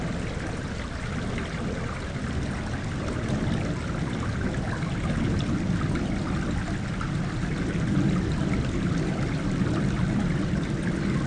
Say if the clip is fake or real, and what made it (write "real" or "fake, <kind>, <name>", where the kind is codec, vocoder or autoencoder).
real